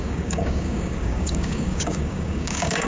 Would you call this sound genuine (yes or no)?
no